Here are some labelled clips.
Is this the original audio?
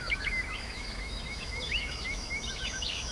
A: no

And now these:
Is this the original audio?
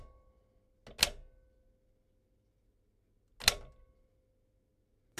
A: yes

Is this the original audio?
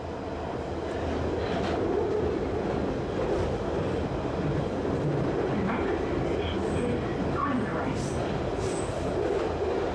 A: yes